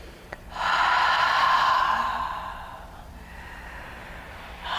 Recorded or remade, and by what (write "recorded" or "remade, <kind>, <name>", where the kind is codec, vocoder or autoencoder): remade, vocoder, BigVGAN v2